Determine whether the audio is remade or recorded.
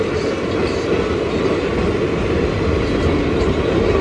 recorded